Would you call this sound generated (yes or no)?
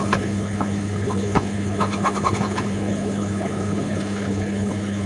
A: yes